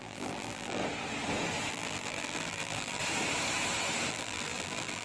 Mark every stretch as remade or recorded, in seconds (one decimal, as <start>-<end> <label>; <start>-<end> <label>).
0.0-0.8 remade; 0.8-1.7 recorded; 1.7-3.0 remade; 3.0-4.1 recorded; 4.1-5.0 remade